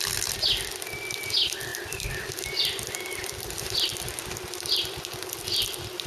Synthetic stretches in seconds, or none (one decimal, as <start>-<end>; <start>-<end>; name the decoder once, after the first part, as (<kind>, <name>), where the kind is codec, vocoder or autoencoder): none